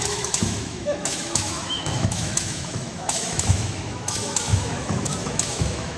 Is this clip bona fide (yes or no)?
no